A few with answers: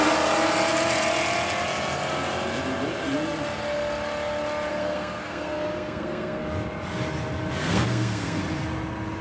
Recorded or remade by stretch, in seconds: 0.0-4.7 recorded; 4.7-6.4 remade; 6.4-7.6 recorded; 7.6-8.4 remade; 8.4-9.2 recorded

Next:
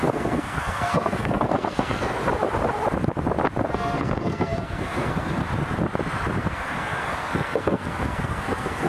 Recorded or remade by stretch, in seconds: 0.0-2.2 remade; 2.2-3.7 recorded; 3.7-5.4 remade; 5.4-6.4 recorded; 6.4-8.9 remade

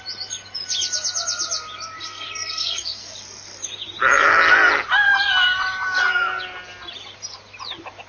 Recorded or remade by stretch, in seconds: 0.0-2.0 recorded; 2.0-3.1 remade; 3.1-8.1 recorded